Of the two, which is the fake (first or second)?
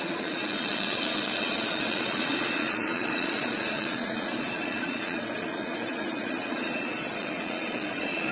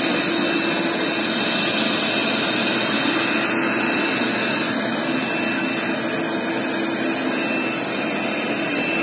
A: first